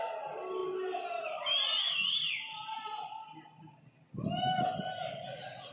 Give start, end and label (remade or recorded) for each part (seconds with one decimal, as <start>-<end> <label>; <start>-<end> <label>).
0.0-5.7 recorded